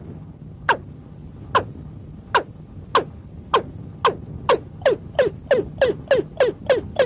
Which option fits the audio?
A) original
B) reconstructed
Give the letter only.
A